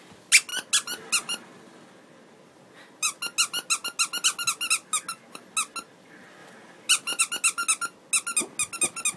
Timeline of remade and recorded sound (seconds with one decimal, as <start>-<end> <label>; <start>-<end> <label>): 0.0-9.2 recorded